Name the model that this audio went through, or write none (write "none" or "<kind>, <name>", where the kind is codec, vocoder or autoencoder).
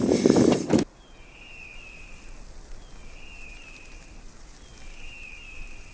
none